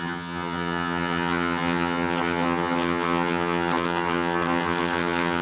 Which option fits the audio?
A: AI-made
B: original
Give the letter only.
A